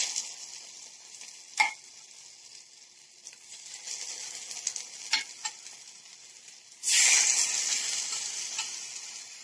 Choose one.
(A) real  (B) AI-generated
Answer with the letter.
A